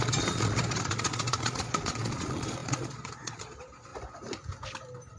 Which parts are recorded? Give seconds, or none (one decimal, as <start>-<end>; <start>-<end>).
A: 3.9-5.2